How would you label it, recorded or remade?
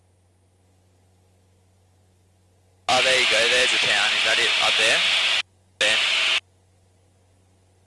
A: recorded